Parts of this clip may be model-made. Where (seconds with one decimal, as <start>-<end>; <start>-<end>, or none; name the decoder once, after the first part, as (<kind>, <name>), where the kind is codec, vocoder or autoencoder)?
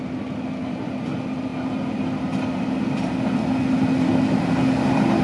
none